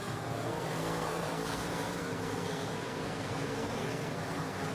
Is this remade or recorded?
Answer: remade